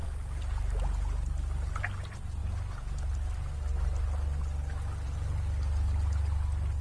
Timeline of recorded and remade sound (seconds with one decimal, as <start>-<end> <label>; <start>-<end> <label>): 0.0-6.8 recorded